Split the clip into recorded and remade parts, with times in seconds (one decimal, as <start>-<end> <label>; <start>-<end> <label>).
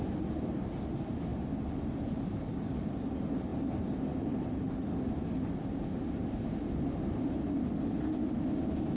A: 0.0-9.0 recorded